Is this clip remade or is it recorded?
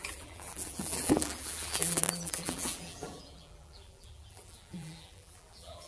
remade